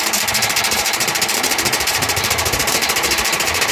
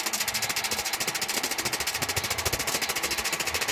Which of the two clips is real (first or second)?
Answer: second